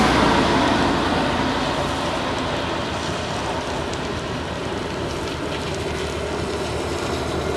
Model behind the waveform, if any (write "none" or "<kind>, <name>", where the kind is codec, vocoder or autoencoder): none